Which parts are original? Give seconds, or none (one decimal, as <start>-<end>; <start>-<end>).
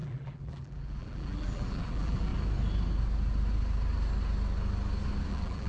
2.3-5.3